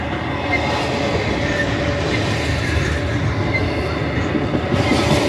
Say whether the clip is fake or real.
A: real